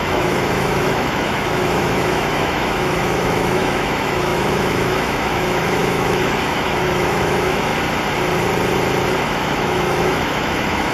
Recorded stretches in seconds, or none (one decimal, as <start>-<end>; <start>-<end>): 7.7-9.2